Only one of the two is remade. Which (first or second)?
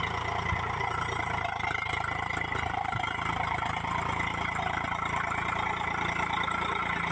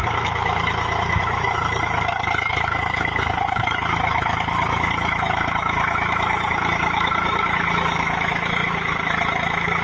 second